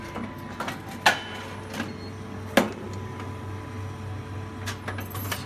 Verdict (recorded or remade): recorded